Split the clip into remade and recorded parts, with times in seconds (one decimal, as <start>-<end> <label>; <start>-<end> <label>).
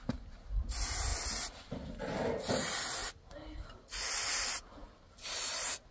0.0-5.9 recorded